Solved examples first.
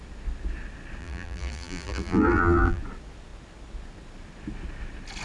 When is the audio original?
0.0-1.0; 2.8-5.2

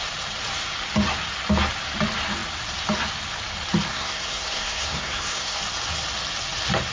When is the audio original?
0.0-3.9; 5.6-6.9

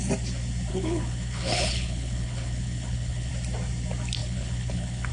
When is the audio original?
0.0-0.7; 3.3-4.2

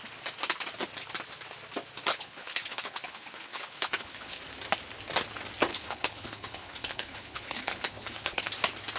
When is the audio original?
0.0-2.1; 4.4-5.7; 8.5-9.0

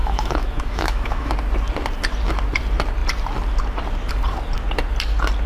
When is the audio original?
1.3-5.5